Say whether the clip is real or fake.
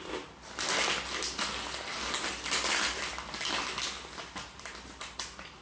real